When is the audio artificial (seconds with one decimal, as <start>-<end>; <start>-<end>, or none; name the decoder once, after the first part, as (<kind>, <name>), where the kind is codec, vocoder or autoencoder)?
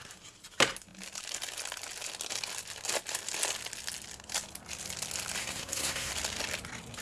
5.4-6.1 (codec, SNAC)